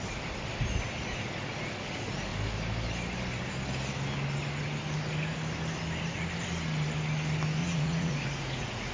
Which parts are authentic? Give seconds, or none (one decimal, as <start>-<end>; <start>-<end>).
0.0-7.6